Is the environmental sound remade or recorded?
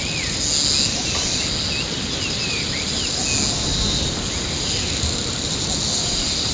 recorded